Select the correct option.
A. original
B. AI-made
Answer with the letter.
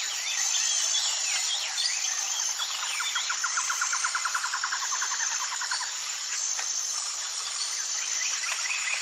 B